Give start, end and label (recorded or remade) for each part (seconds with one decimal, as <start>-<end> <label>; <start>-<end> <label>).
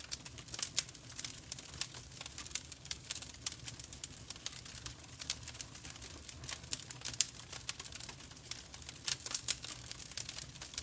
0.0-2.4 recorded; 2.4-3.3 remade; 3.3-9.1 recorded; 9.1-10.1 remade; 10.1-10.8 recorded